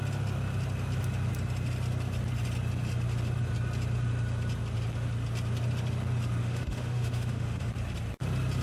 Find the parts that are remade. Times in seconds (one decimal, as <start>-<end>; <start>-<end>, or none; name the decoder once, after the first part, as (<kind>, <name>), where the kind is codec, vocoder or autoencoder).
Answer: 6.4-7.7 (autoencoder, DAC-VAE)